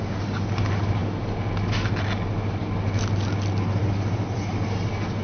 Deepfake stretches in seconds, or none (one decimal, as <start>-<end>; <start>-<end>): none